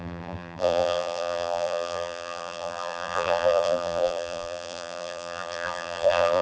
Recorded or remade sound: remade